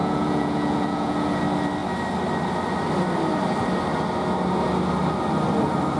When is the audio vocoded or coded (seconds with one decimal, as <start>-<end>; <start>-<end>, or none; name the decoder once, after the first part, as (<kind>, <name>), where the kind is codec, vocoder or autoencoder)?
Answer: 0.0-1.4 (vocoder, Vocos)